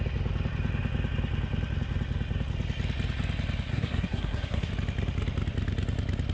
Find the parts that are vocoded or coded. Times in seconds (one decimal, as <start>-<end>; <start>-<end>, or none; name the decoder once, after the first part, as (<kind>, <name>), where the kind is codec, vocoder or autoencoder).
3.7-4.7 (codec, SNAC)